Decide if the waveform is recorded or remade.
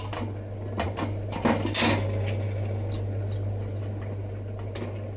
recorded